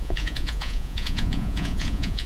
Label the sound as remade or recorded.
remade